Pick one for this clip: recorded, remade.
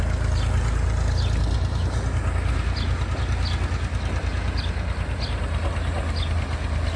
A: recorded